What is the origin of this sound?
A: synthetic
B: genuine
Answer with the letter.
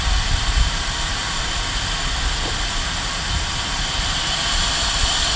B